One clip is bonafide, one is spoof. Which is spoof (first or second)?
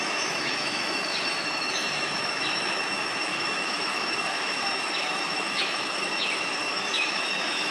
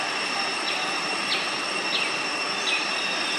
first